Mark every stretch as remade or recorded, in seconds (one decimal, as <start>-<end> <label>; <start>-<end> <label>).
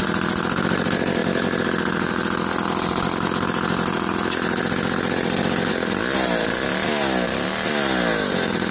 0.0-8.7 recorded